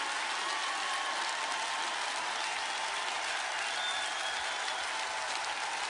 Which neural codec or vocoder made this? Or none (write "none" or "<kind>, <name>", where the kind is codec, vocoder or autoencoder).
none